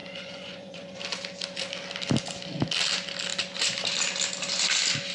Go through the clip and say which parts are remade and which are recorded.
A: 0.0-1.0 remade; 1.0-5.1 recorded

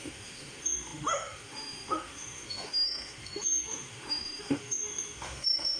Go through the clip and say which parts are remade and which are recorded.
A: 0.0-5.8 remade

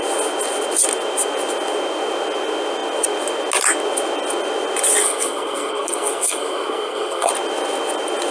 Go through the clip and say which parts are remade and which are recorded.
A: 0.0-5.0 recorded; 5.0-7.3 remade; 7.3-8.3 recorded

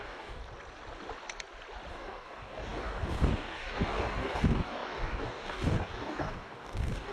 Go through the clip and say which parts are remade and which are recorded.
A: 0.0-0.4 remade; 0.4-1.9 recorded; 1.9-7.1 remade

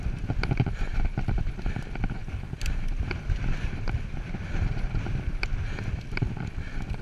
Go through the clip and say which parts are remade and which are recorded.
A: 0.0-7.0 recorded

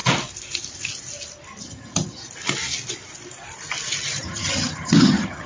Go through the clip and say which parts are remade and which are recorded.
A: 0.0-1.6 recorded; 1.6-2.2 remade; 2.2-4.2 recorded; 4.2-5.5 remade